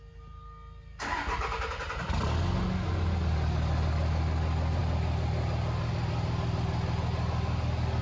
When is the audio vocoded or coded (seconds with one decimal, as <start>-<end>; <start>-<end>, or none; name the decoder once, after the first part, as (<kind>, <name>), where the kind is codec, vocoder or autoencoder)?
none